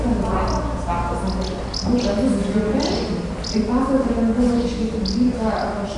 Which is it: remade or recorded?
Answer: recorded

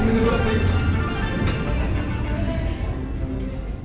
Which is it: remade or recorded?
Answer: recorded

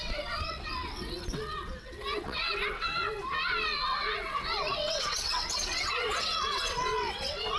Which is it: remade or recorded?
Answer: remade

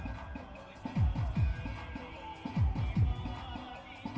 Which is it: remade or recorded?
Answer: recorded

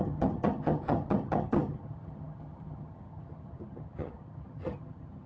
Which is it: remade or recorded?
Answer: remade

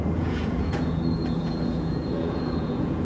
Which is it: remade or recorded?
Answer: remade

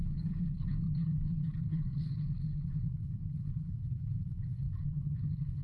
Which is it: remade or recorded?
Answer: remade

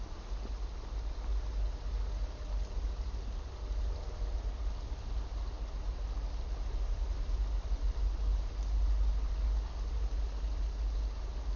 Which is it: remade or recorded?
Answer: recorded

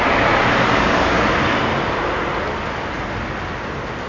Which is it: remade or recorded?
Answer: recorded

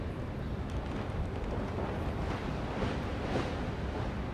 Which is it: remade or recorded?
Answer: recorded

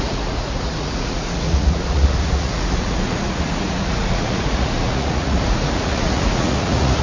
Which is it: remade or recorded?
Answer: remade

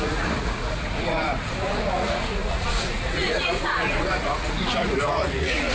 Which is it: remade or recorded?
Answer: remade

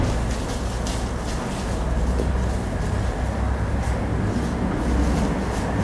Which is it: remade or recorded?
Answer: recorded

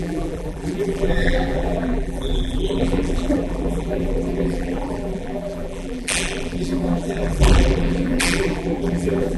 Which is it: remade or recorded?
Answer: remade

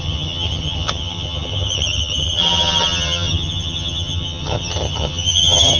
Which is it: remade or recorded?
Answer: remade